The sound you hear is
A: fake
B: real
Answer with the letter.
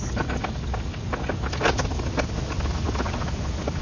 B